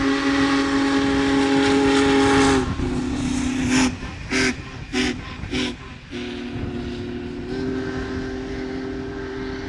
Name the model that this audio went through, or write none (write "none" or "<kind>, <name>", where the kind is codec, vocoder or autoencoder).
none